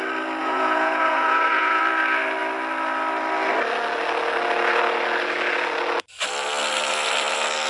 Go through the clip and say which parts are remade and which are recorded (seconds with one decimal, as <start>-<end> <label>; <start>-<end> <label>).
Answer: 0.0-0.4 recorded; 0.4-1.8 remade; 1.8-7.7 recorded

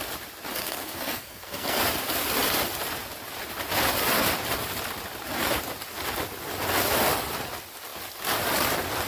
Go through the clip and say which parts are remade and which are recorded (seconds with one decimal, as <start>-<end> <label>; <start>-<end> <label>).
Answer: 0.0-0.6 recorded; 0.6-1.8 remade; 1.8-9.1 recorded

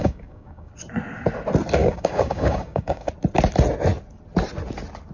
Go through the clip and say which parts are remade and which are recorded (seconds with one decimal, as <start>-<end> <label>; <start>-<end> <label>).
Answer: 0.0-0.7 remade; 0.7-1.8 recorded; 1.8-3.1 remade; 3.1-5.1 recorded

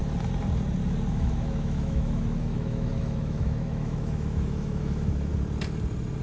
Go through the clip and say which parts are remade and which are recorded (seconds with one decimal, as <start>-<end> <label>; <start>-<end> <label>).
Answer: 0.0-1.1 recorded; 1.1-5.3 remade; 5.3-6.2 recorded

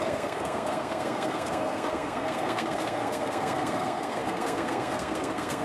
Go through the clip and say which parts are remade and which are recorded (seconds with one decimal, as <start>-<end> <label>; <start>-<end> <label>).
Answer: 0.0-5.6 remade

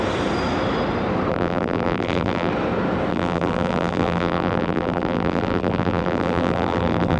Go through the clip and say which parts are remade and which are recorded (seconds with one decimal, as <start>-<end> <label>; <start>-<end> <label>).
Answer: 0.0-1.3 recorded; 1.3-2.5 remade; 2.5-3.1 recorded; 3.1-7.2 remade

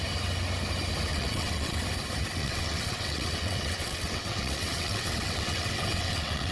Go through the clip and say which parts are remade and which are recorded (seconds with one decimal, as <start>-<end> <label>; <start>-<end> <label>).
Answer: 0.0-1.1 recorded; 1.1-1.8 remade; 1.8-2.4 recorded; 2.4-6.5 remade